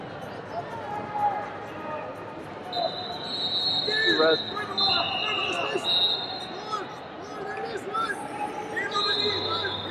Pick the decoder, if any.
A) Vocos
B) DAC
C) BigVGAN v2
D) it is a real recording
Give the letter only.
D